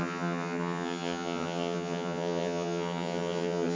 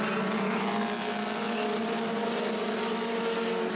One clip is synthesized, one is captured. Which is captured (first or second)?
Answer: second